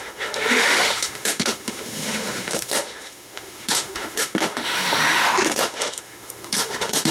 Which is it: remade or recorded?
remade